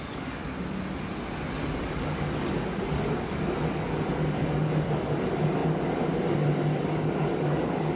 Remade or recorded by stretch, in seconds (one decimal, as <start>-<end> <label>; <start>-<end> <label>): 0.0-0.4 remade; 0.4-1.8 recorded; 1.8-8.0 remade